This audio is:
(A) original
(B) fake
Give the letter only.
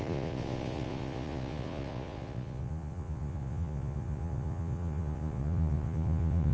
B